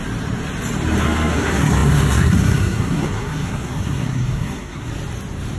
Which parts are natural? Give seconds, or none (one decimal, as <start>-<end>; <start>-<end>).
0.0-1.0; 4.9-5.6